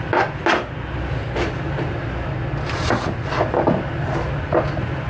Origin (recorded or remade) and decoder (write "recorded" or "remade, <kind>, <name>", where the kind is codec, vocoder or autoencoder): recorded